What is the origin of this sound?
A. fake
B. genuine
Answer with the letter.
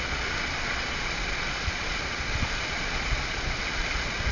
A